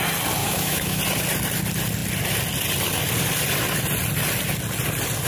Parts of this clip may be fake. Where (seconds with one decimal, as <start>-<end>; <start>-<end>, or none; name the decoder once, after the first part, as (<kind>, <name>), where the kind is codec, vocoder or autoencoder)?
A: 0.4-1.0 (autoencoder, DAC-VAE)